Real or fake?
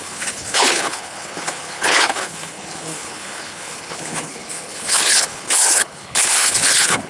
fake